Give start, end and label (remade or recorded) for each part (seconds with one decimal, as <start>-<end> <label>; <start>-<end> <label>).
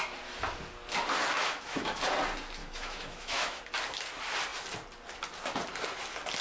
0.0-1.4 recorded; 1.4-2.0 remade; 2.0-2.6 recorded; 2.6-3.6 remade; 3.6-6.4 recorded